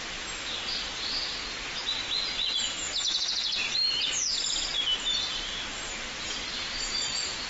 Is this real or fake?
real